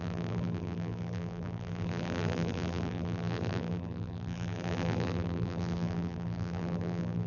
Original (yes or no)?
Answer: no